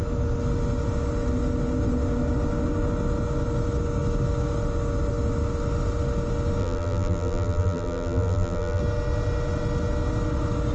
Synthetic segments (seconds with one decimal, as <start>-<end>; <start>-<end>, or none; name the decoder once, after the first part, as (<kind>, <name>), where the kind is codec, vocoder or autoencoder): 6.6-8.8 (vocoder, BigVGAN v2)